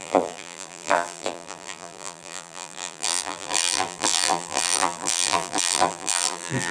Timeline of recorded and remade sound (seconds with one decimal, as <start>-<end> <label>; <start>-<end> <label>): 0.0-6.7 remade